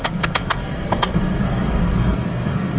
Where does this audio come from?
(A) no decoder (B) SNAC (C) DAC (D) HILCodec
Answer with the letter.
B